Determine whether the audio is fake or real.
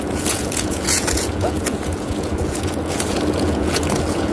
fake